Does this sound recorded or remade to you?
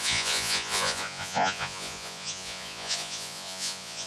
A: remade